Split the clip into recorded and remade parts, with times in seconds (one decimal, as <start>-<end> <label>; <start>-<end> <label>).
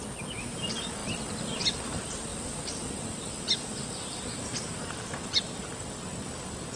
0.0-6.8 recorded